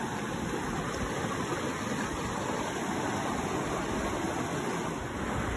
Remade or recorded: recorded